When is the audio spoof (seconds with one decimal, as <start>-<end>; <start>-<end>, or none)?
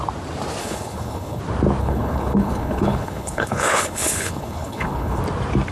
0.6-1.4; 1.8-5.2